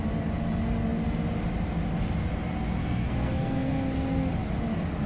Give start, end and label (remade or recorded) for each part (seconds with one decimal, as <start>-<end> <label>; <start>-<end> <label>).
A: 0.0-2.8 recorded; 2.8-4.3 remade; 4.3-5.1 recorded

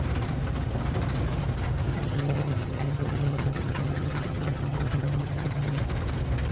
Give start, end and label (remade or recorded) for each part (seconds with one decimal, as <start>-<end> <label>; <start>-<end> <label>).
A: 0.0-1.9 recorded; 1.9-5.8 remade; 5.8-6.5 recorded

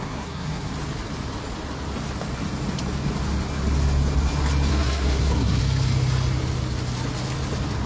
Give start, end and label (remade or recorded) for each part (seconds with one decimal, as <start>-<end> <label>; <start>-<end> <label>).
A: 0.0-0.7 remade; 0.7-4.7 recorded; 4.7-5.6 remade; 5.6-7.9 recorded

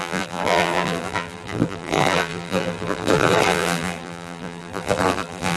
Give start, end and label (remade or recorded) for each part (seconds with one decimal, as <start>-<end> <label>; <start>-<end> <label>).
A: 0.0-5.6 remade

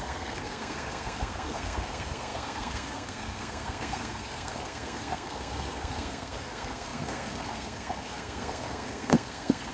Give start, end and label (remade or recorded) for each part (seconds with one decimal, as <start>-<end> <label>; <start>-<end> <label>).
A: 0.0-9.7 remade

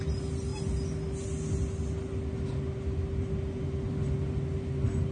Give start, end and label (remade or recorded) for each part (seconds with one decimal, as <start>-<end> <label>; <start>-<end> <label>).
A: 0.0-5.1 recorded

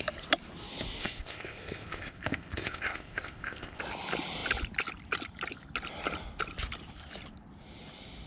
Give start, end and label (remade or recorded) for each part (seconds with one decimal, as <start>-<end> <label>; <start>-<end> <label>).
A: 0.0-1.0 recorded; 1.0-3.8 remade; 3.8-8.3 recorded